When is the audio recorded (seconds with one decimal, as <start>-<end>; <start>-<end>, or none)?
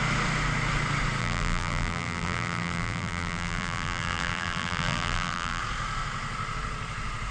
0.0-1.2; 5.6-7.3